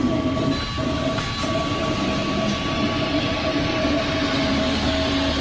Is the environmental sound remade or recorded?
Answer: recorded